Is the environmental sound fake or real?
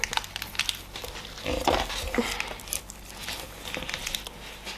real